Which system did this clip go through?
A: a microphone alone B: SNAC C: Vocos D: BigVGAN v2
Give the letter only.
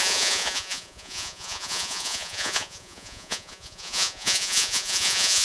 C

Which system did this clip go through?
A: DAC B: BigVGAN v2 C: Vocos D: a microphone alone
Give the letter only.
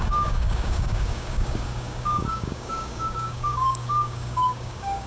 A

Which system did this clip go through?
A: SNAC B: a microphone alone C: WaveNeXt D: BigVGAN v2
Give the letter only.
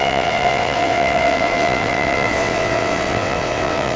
C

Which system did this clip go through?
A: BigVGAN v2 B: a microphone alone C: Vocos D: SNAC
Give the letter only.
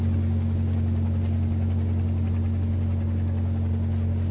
B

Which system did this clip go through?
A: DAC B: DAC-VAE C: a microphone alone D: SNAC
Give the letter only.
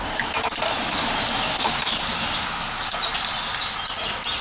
C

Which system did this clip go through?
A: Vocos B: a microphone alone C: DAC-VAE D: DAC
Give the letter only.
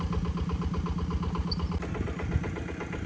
B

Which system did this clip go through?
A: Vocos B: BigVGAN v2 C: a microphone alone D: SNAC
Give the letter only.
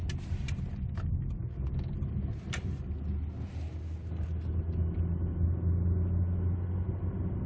C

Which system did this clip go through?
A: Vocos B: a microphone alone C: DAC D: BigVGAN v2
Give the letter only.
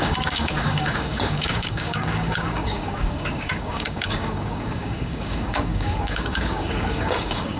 C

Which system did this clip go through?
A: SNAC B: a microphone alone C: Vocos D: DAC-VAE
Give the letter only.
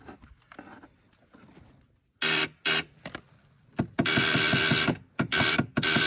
B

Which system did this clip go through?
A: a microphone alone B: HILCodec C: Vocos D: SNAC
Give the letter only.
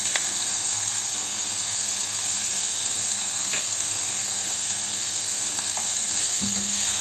D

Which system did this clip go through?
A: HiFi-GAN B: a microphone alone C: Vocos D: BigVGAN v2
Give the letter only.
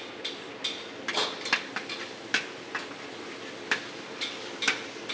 B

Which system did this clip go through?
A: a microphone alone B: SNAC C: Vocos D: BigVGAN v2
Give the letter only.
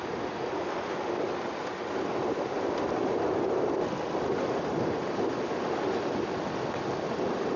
A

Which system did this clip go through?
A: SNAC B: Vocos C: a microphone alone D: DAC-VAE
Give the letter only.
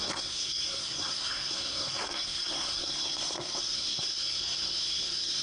A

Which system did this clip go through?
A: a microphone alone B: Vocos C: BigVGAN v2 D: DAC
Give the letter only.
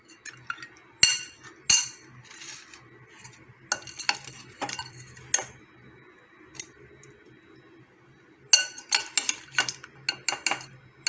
A